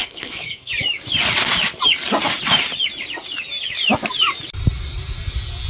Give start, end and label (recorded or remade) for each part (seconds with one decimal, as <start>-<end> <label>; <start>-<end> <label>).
0.0-0.7 remade; 0.7-5.7 recorded